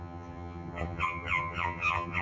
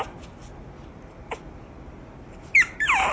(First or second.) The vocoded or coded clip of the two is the first